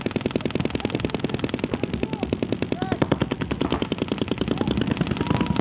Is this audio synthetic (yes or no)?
no